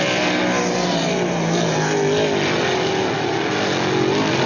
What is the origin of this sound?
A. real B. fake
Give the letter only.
A